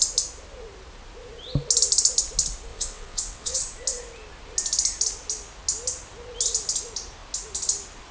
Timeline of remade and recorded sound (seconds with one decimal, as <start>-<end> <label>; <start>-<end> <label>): 0.0-2.7 recorded; 2.7-3.6 remade; 3.6-8.1 recorded